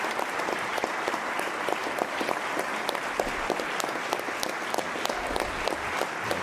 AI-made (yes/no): yes